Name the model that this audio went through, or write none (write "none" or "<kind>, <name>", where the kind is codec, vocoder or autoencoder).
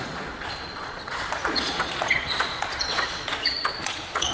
vocoder, Vocos